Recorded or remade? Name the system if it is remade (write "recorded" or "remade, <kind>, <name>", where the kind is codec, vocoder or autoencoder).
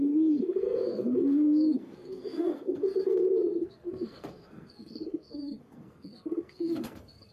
remade, codec, SNAC